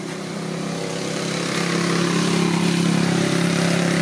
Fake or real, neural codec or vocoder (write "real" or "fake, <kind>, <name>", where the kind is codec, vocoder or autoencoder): real